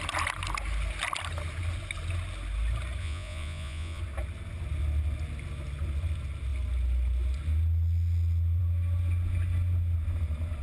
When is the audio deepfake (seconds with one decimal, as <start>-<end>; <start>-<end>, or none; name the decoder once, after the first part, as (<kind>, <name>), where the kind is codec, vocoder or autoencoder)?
3.0-4.0 (vocoder, Vocos)